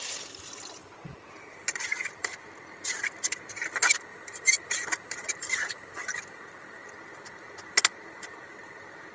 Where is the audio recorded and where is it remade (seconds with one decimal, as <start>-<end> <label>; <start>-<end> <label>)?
0.0-0.8 recorded; 0.8-2.4 remade; 2.4-4.1 recorded; 4.1-6.4 remade; 6.4-9.1 recorded